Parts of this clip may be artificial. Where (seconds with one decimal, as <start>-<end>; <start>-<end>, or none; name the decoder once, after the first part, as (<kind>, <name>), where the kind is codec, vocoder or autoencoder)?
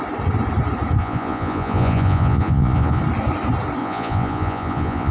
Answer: 1.0-3.0 (vocoder, Vocos); 3.8-5.1